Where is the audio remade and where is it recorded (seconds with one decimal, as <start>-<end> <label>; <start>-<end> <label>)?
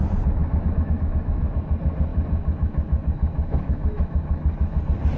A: 0.0-0.4 recorded; 0.4-1.5 remade; 1.5-2.1 recorded; 2.1-4.8 remade; 4.8-5.2 recorded